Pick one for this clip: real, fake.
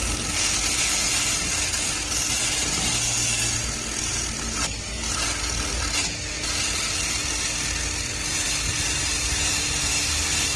real